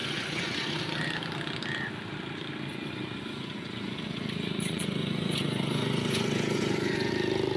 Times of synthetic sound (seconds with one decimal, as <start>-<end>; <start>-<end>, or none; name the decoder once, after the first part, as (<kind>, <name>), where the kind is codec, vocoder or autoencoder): 0.0-0.8 (vocoder, Vocos); 2.7-7.1